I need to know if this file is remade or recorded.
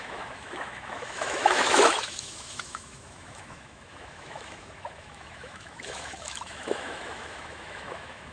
remade